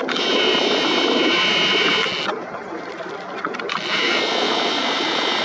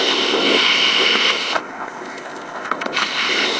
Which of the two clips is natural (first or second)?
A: first